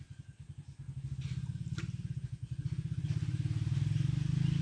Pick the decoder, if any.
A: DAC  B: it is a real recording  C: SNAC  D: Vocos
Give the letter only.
B